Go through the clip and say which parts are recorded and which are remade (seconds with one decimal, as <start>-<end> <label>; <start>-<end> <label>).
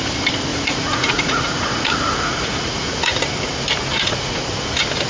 0.0-0.5 recorded; 0.5-3.2 remade; 3.2-3.9 recorded; 3.9-4.4 remade; 4.4-5.1 recorded